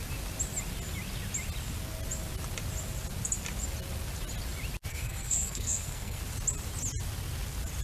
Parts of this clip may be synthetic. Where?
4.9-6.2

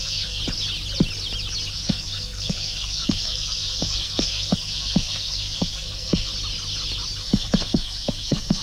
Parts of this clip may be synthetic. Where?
0.0-0.4; 1.7-6.3; 7.2-8.6

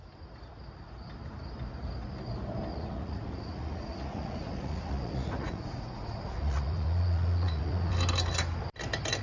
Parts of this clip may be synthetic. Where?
2.7-7.9

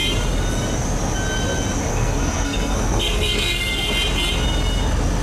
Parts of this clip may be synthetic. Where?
1.9-3.9

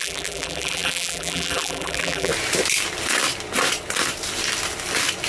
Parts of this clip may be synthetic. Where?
0.0-2.3

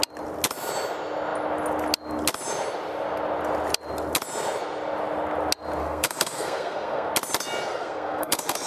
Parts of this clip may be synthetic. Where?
5.8-7.1; 7.7-8.7

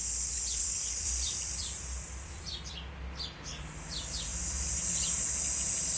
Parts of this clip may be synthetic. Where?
0.6-2.9; 4.3-4.9

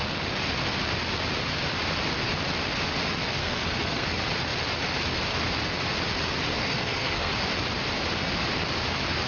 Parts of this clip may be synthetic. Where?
3.4-4.1; 6.6-7.3